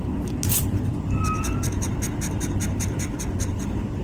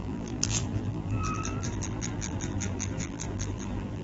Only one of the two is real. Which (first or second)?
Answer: first